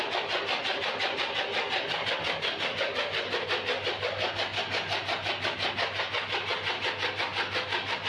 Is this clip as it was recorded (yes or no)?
yes